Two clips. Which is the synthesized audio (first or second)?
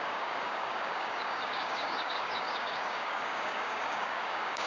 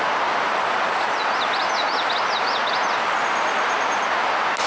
first